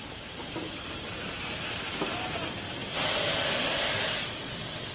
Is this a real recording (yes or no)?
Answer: yes